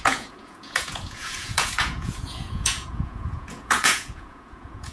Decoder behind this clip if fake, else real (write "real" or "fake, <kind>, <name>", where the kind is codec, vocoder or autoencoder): fake, vocoder, Vocos